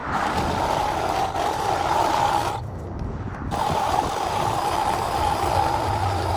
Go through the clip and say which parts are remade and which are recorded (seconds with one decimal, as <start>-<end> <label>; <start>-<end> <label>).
0.0-6.4 remade

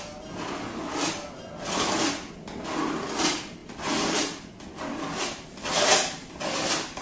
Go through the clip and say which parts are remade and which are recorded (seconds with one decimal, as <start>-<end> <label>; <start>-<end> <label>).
0.0-7.0 recorded

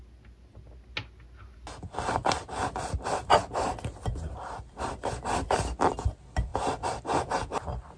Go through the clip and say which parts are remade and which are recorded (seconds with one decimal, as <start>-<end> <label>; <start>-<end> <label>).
0.0-8.0 recorded